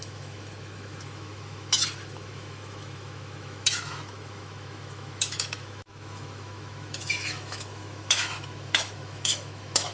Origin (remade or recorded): remade